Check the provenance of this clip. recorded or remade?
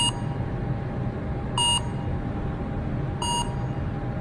recorded